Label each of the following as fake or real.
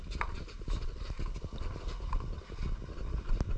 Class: real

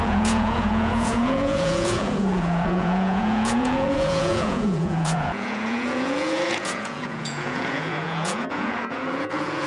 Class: fake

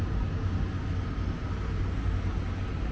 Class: real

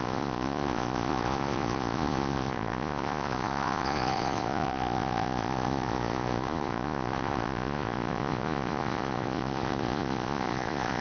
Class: fake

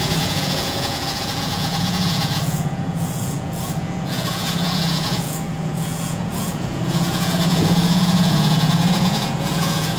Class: fake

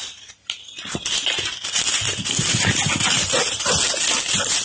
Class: real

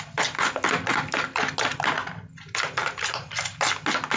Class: real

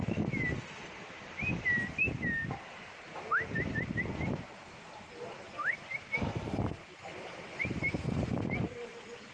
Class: real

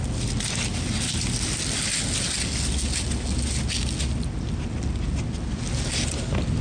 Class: real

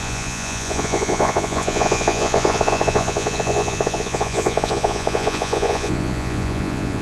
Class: fake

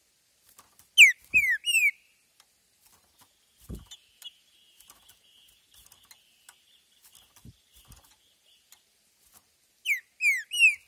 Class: real